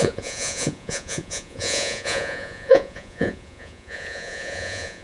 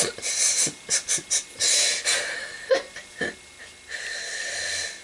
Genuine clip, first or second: second